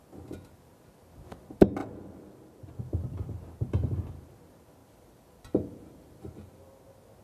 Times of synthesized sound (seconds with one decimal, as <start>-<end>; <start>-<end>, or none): 1.8-3.4; 4.8-6.5